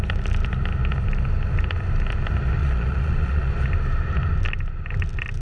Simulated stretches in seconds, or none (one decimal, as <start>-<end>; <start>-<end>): 2.6-3.5